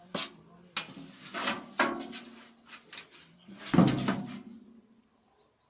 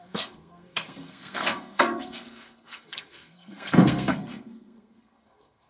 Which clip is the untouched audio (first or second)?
first